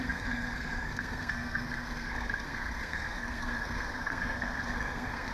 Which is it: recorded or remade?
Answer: remade